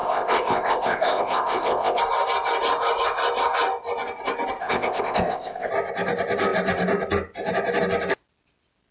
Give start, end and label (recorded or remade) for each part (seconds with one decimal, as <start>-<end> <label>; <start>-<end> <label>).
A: 0.0-2.0 remade; 2.0-4.6 recorded; 4.6-5.7 remade; 5.7-8.9 recorded